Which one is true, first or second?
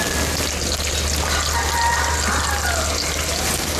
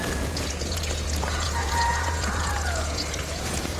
first